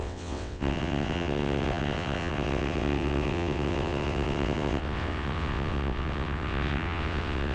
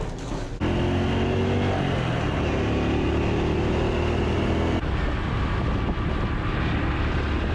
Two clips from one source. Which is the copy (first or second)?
first